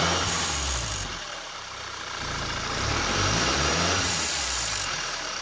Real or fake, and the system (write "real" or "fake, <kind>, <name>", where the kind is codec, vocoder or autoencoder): fake, vocoder, BigVGAN v2